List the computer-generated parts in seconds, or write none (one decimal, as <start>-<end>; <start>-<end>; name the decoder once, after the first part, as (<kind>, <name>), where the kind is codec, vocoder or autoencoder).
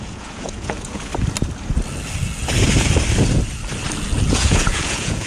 0.0-1.1 (vocoder, Vocos); 4.3-5.3